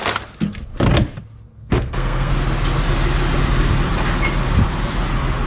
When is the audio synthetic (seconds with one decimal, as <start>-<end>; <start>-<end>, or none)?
1.5-2.3